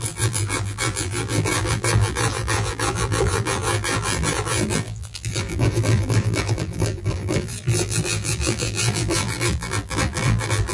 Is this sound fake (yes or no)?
yes